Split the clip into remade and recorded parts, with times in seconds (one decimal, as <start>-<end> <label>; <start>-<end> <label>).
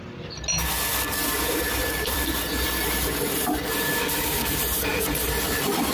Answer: 0.0-0.9 recorded; 0.9-4.0 remade; 4.0-5.9 recorded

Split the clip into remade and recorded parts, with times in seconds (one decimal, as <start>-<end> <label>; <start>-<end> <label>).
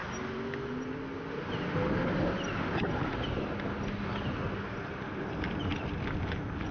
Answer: 0.0-6.7 recorded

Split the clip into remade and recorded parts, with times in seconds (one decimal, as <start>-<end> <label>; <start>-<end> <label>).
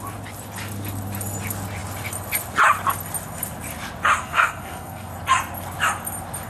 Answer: 0.0-4.2 recorded; 4.2-5.1 remade; 5.1-6.5 recorded